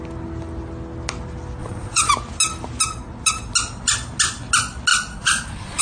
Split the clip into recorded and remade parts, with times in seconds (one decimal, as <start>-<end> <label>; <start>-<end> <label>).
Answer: 0.0-1.6 recorded; 1.6-2.1 remade; 2.1-4.9 recorded; 4.9-5.8 remade